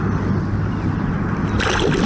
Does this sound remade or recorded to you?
recorded